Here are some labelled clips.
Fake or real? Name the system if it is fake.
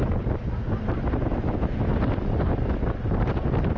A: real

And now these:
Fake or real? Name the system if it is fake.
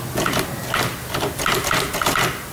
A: real